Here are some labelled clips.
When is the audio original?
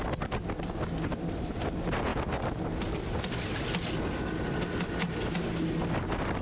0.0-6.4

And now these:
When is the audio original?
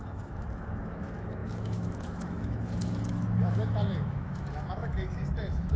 none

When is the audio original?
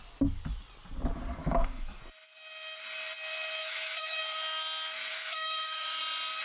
0.0-1.4; 2.0-3.6; 4.2-5.1; 6.0-6.4